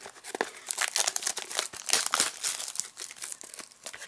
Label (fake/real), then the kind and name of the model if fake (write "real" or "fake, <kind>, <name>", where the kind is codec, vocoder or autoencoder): real